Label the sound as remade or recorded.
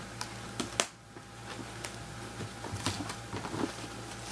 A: recorded